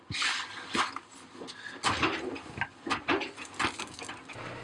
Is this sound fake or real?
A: real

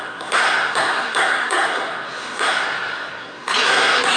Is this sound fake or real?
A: fake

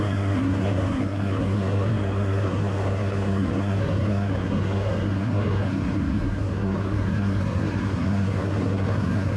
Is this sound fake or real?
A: fake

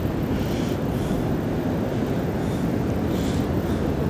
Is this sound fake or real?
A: real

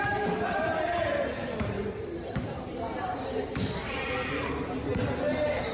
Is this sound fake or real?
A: fake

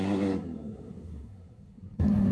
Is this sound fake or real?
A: fake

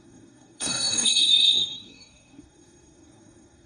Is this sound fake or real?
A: fake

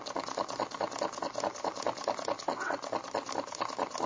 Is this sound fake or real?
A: real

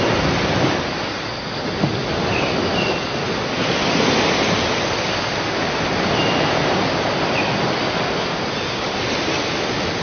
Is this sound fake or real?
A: real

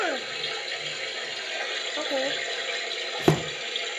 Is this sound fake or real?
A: real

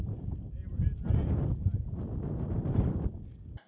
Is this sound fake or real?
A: real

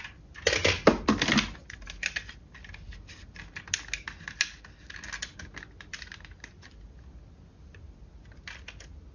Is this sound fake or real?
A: real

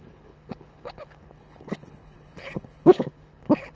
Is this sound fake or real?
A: fake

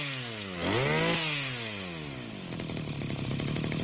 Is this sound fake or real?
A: real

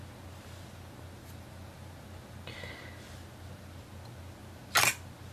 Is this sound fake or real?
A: real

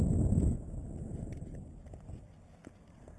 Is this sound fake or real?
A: real